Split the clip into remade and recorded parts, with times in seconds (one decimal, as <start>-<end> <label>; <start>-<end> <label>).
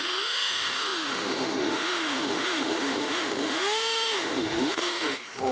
0.0-5.5 remade